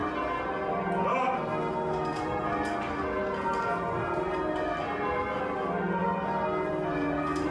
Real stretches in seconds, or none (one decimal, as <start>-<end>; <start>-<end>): 0.0-7.5